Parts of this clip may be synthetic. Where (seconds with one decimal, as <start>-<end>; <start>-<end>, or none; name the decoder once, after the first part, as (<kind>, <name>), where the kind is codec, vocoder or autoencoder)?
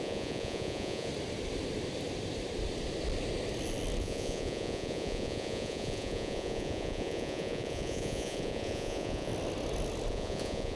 0.0-1.1 (vocoder, Vocos); 4.0-9.3; 10.1-10.8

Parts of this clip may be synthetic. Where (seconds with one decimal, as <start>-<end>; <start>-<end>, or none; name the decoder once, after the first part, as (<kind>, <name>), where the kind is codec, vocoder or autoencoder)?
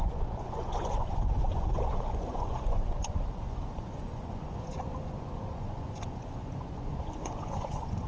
0.0-8.1 (vocoder, Vocos)